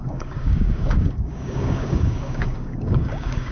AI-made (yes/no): yes